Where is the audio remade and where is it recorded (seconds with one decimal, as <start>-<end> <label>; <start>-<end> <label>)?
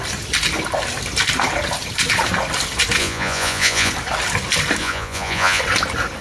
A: 0.0-3.0 recorded; 3.0-3.9 remade; 3.9-4.8 recorded; 4.8-5.6 remade; 5.6-6.2 recorded